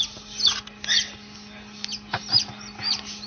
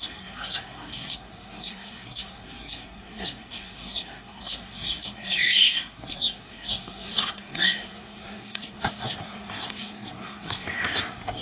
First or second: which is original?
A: first